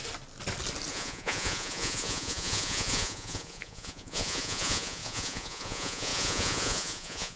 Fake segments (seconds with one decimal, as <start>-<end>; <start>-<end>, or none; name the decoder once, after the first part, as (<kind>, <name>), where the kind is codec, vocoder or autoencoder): 0.9-7.4 (vocoder, Vocos)